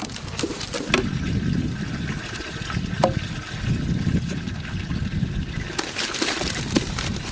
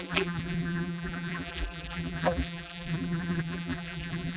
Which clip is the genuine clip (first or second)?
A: first